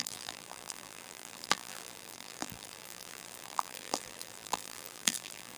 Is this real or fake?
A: fake